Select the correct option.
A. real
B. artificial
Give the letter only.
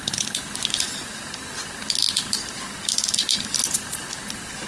A